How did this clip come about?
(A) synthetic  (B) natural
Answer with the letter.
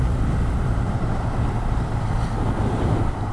A